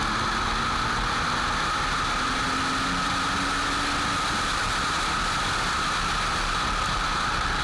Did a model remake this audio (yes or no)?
no